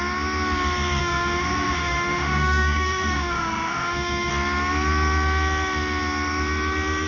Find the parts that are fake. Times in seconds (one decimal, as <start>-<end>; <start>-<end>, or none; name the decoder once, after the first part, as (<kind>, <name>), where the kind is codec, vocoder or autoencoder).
1.0-4.3 (autoencoder, DAC-VAE)

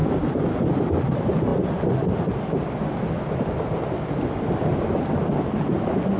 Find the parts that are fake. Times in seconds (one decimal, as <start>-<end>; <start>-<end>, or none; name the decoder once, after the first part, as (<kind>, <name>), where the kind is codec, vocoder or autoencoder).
none